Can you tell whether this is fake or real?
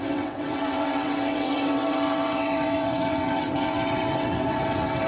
fake